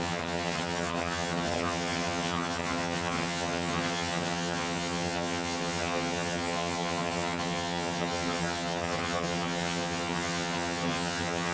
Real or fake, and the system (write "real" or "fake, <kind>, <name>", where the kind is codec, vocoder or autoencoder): fake, vocoder, HiFi-GAN